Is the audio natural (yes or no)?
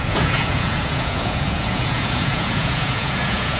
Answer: no